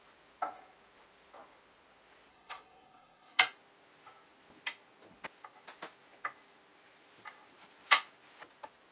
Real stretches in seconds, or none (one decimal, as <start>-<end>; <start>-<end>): 0.0-2.3; 3.4-8.9